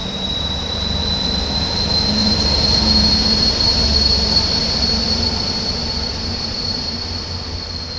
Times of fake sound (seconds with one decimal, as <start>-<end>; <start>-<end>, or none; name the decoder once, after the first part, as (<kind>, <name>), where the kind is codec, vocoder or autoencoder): 0.0-1.0 (vocoder, BigVGAN v2); 2.2-7.0